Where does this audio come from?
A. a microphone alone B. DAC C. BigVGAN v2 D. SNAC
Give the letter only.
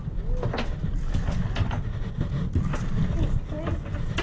A